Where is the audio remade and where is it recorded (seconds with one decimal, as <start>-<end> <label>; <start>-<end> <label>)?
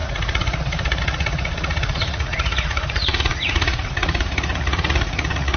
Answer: 0.0-5.6 remade